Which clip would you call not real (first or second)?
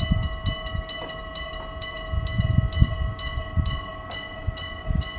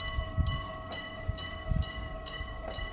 second